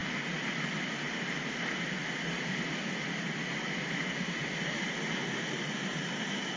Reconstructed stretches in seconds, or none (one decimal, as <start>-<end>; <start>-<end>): none